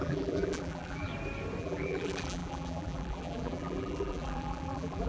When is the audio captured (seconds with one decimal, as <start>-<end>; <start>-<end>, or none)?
1.1-1.6